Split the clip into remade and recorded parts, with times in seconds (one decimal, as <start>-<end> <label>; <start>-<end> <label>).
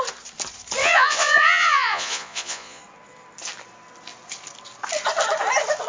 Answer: 0.0-0.8 recorded; 0.8-2.8 remade; 2.8-5.9 recorded